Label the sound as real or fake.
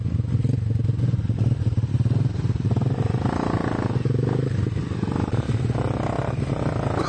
real